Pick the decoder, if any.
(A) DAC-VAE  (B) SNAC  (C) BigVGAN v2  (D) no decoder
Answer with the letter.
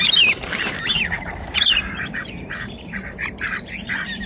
C